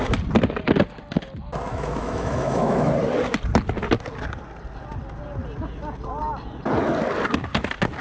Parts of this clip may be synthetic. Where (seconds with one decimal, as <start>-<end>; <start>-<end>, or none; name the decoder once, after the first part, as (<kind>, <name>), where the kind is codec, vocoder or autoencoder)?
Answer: 1.7-2.9 (autoencoder, DAC-VAE)